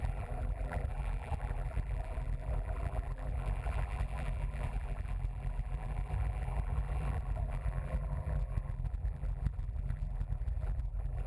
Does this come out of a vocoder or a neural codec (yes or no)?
yes